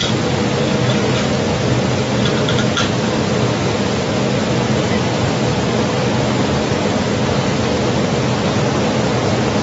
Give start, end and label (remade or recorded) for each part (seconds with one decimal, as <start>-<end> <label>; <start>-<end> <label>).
0.0-9.6 recorded